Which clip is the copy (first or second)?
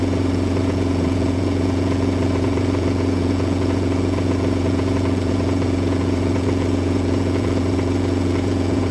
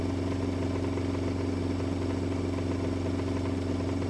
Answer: first